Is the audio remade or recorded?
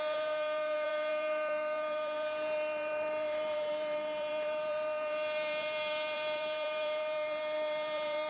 remade